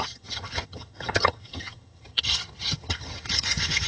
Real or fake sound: fake